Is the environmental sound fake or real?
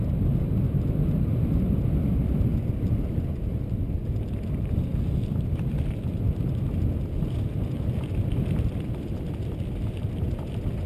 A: real